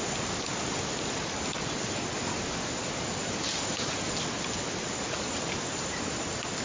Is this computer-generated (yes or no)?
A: no